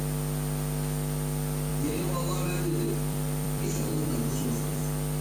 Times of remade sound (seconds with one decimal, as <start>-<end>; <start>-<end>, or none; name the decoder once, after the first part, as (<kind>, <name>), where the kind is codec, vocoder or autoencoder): 1.7-4.8 (vocoder, BigVGAN v2)